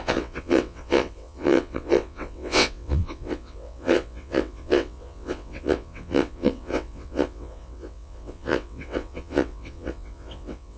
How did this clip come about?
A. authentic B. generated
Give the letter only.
B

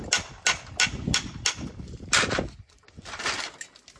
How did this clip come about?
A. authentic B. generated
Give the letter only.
A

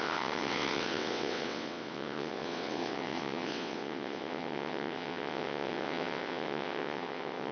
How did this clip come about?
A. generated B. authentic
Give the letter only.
A